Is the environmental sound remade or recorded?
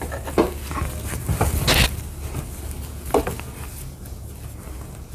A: recorded